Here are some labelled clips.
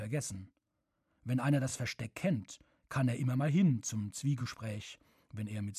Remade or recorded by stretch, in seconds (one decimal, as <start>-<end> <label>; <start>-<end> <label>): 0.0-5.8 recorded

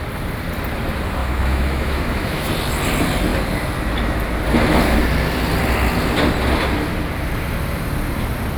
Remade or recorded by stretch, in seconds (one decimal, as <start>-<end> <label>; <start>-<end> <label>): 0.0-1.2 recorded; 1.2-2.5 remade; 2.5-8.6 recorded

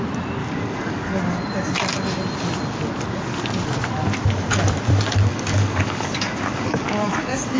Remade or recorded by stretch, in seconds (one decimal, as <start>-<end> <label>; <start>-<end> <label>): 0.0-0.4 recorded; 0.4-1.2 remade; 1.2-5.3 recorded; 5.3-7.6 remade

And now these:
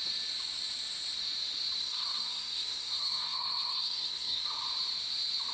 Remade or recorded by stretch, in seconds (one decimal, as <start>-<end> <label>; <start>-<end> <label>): 0.0-1.8 recorded; 1.8-4.5 remade; 4.5-5.5 recorded

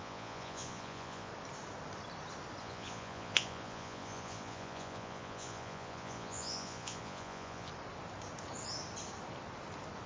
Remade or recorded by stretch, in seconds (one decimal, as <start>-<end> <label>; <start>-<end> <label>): 0.0-1.3 remade; 1.3-2.6 recorded; 2.6-7.7 remade; 7.7-10.1 recorded